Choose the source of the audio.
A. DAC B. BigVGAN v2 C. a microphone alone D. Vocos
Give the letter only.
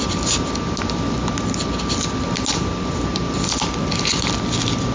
C